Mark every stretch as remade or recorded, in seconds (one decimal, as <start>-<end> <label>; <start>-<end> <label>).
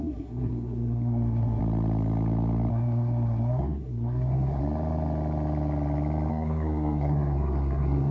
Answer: 0.0-1.6 remade; 1.6-2.7 recorded; 2.7-4.6 remade; 4.6-6.3 recorded; 6.3-8.1 remade